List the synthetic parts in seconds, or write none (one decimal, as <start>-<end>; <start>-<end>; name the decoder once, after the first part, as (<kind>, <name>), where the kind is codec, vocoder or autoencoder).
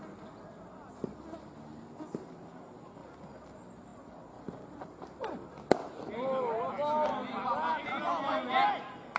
none